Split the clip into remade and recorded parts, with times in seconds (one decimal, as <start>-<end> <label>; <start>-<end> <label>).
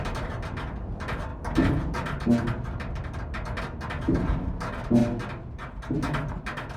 0.0-6.8 recorded